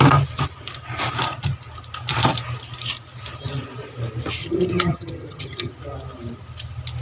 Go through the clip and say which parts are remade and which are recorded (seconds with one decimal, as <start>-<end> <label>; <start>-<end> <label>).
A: 0.0-4.4 recorded; 4.4-5.7 remade; 5.7-7.0 recorded